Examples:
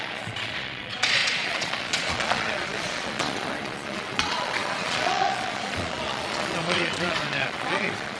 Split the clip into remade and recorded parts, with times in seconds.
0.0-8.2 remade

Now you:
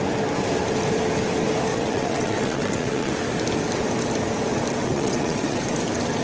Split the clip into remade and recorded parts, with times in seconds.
0.0-1.7 recorded; 1.7-3.1 remade; 3.1-4.8 recorded; 4.8-5.6 remade; 5.6-6.2 recorded

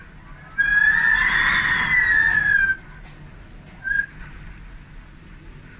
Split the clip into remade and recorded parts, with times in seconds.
0.0-5.8 recorded

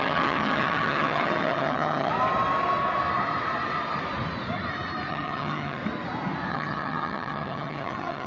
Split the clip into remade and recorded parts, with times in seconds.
0.0-2.1 remade; 2.1-5.1 recorded; 5.1-5.8 remade; 5.8-6.5 recorded; 6.5-8.3 remade

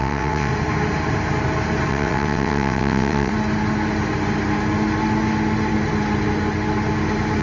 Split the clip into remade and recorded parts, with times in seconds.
0.0-0.5 remade; 0.5-1.9 recorded; 1.9-3.3 remade; 3.3-7.4 recorded

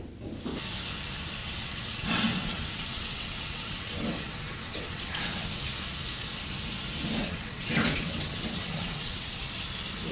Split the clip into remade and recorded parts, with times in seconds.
0.0-1.4 recorded; 1.4-5.5 remade; 5.5-7.2 recorded; 7.2-9.4 remade; 9.4-10.1 recorded

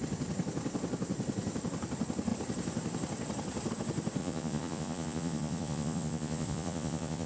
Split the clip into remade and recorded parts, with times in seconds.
0.0-4.2 recorded; 4.2-7.3 remade